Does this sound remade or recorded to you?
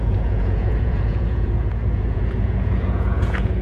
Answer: remade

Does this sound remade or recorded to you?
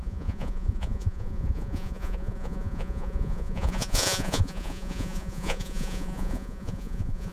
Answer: remade